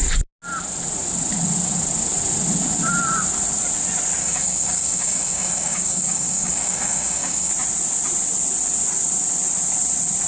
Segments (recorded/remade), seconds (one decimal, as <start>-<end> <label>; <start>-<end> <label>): 0.0-4.2 recorded; 4.2-7.5 remade; 7.5-10.3 recorded